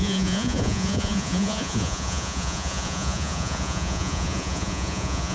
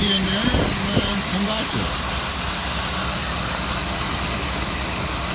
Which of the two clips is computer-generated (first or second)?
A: first